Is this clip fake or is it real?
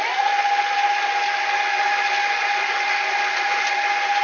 real